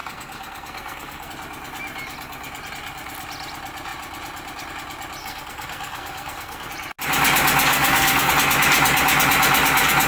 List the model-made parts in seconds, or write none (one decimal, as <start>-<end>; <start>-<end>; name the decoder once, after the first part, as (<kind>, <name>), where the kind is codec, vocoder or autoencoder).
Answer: 0.0-1.3 (codec, SNAC); 5.2-6.7; 7.7-8.3